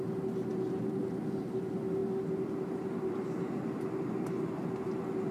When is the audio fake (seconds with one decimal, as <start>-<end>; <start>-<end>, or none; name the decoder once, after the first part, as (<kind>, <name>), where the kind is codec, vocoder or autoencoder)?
none